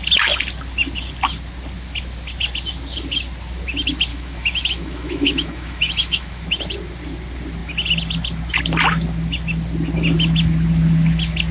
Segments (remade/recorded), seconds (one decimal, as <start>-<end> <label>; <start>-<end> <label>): 0.0-4.1 recorded; 4.1-6.4 remade; 6.4-11.5 recorded

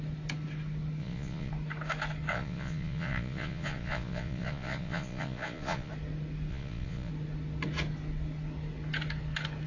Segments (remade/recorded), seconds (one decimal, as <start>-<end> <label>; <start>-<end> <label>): 0.0-1.0 recorded; 1.0-1.5 remade; 1.5-2.3 recorded; 2.3-5.9 remade; 5.9-6.5 recorded; 6.5-7.1 remade; 7.1-9.7 recorded

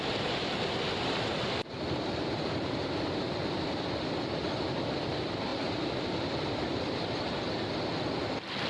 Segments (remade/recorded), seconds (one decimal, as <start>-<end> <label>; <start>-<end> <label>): 0.0-8.7 recorded